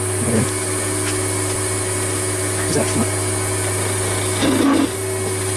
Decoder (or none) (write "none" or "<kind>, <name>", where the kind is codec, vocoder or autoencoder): none